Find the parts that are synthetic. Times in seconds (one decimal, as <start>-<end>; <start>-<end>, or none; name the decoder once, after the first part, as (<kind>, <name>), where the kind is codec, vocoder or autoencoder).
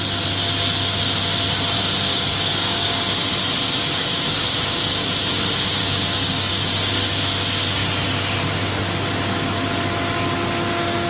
2.1-2.9 (codec, DAC); 4.0-5.1; 5.8-6.5